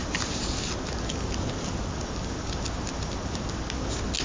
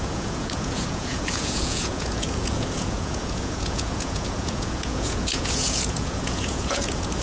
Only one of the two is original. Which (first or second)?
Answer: first